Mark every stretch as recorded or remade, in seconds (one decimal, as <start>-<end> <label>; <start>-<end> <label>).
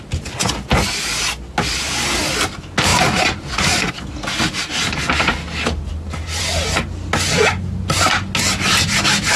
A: 0.0-9.4 recorded